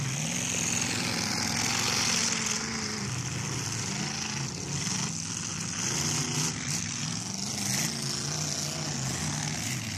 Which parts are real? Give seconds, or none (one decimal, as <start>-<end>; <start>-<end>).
0.0-10.0